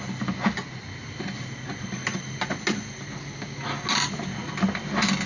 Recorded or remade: recorded